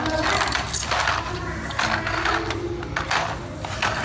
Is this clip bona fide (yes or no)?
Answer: yes